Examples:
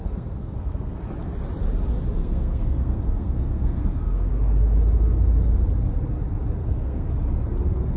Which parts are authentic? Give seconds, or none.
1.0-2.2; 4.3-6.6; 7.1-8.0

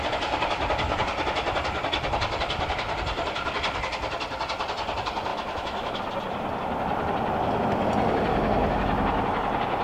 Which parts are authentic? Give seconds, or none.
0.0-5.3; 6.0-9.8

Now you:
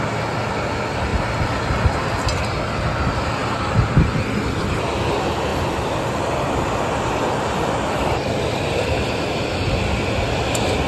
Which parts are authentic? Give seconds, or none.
0.0-5.5; 9.5-10.9

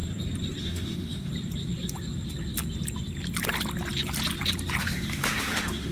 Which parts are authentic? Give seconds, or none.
0.0-0.6; 1.3-4.8